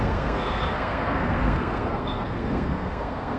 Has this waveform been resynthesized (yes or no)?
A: yes